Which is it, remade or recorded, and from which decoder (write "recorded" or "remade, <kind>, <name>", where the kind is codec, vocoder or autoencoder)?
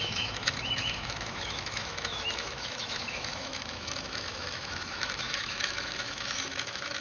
remade, autoencoder, DAC-VAE